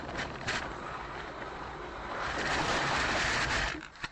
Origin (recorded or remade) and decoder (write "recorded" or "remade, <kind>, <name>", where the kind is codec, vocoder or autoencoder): remade, vocoder, BigVGAN v2